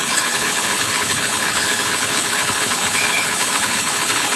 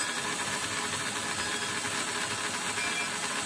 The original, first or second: second